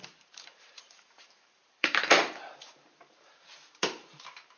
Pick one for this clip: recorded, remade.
remade